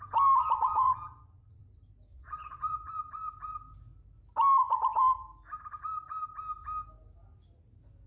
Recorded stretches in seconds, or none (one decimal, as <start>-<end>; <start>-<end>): 0.0-0.4; 1.6-2.1; 2.9-8.1